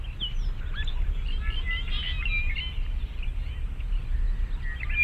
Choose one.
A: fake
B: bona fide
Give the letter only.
B